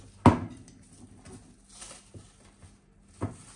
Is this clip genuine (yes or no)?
yes